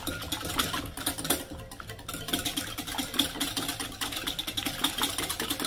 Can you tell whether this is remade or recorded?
recorded